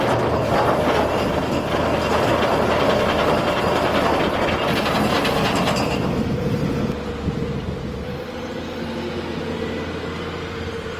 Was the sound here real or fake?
real